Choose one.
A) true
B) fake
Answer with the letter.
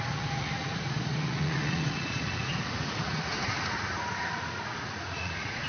B